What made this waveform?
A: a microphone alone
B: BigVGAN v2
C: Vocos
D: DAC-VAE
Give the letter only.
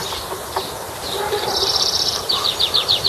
B